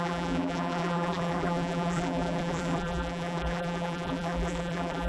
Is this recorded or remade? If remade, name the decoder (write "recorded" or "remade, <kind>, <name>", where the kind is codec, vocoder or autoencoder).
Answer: remade, vocoder, BigVGAN v2